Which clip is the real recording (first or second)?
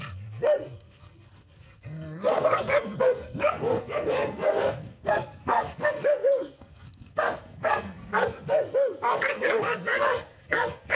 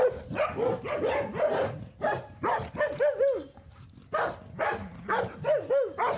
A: second